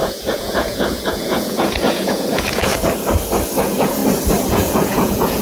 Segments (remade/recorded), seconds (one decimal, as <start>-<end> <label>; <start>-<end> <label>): 0.0-2.7 remade; 2.7-3.6 recorded; 3.6-4.0 remade; 4.0-4.5 recorded; 4.5-5.4 remade